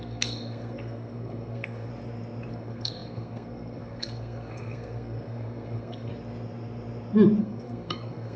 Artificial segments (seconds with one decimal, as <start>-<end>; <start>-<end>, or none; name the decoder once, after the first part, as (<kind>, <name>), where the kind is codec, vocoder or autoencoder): 0.0-1.9 (codec, SNAC); 2.5-6.1; 7.4-8.4

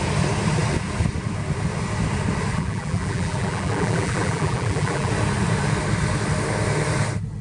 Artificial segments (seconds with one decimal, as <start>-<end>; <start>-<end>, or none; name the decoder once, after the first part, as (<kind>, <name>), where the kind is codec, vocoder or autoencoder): 2.5-5.1 (vocoder, BigVGAN v2)

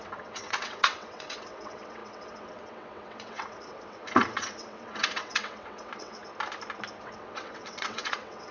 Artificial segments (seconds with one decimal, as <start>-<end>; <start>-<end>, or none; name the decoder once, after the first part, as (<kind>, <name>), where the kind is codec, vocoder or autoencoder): 0.0-6.2 (vocoder, WaveNeXt); 7.0-8.5

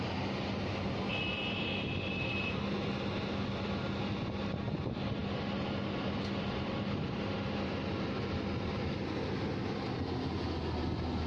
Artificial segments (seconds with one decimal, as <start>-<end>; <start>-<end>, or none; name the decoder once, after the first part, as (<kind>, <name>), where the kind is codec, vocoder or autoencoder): none

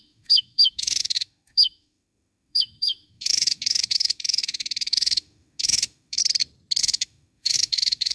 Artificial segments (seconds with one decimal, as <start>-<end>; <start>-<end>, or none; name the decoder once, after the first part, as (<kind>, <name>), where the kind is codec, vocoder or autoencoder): 0.0-6.2 (autoencoder, DAC-VAE); 6.8-8.1